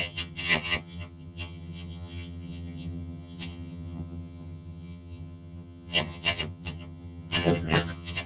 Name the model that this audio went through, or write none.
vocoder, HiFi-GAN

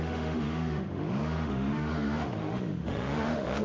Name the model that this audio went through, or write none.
autoencoder, DAC-VAE